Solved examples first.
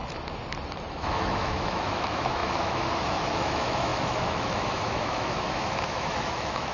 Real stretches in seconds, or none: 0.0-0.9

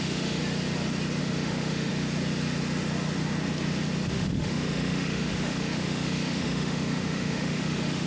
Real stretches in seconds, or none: 0.4-1.2; 1.9-4.1

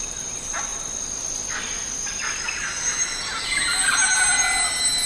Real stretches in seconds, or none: 0.0-5.1

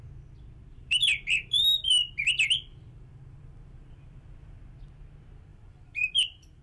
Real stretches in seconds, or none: 0.0-0.7; 4.6-5.5

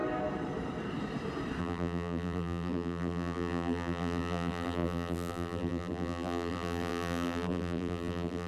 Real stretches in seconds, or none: 0.0-1.6

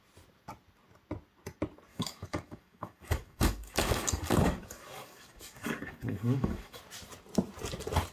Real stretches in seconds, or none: 0.0-1.9; 6.8-8.1